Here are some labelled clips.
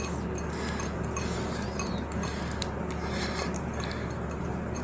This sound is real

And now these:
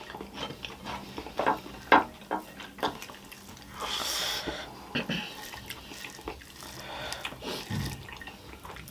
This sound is real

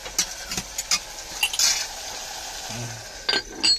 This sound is real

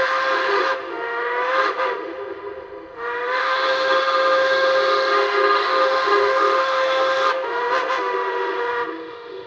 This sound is fake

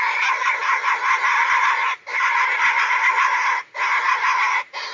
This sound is fake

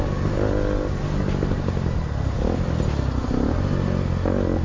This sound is real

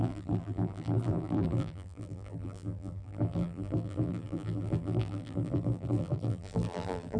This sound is fake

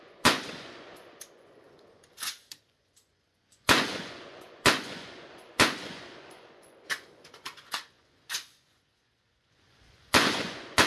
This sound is fake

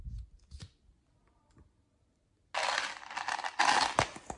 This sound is real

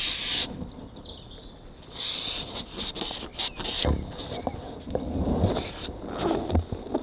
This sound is real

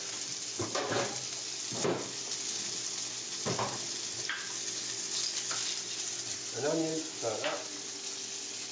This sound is real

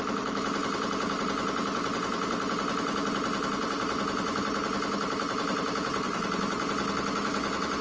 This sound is real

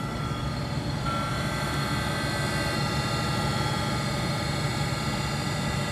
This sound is real